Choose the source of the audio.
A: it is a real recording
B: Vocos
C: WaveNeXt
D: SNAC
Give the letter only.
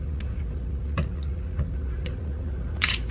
B